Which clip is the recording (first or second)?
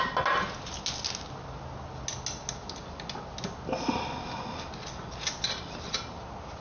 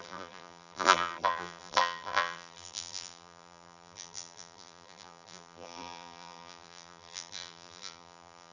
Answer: first